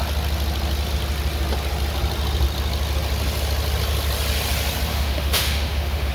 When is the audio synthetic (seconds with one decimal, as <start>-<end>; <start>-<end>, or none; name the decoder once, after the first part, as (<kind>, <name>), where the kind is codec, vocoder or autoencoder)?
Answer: 4.9-6.1 (autoencoder, DAC-VAE)